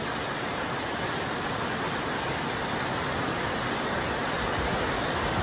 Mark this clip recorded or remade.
recorded